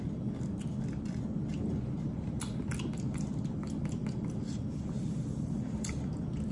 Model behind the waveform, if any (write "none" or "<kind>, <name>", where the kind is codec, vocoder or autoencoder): none